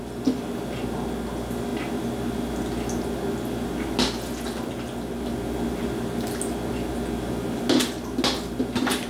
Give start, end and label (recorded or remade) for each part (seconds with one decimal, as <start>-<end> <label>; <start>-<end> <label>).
0.0-9.1 recorded